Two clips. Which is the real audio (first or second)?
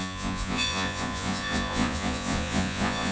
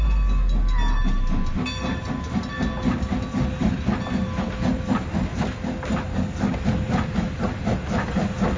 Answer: second